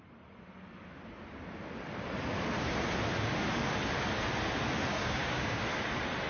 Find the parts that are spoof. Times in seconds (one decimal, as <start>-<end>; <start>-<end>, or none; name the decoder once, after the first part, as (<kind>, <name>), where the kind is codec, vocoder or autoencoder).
4.9-5.6 (codec, DAC)